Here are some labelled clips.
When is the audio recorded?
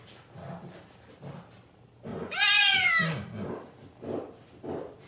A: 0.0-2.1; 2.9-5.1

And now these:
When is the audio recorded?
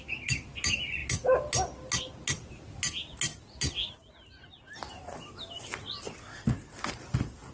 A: 0.0-7.5